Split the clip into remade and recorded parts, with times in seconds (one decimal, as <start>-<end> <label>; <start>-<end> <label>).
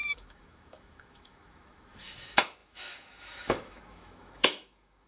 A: 0.0-5.1 remade